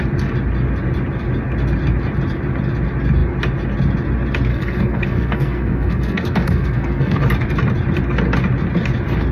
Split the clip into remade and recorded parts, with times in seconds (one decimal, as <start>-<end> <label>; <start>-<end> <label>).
0.0-4.5 recorded; 4.5-7.2 remade; 7.2-9.3 recorded